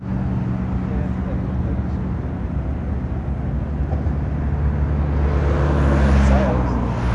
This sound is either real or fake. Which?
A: real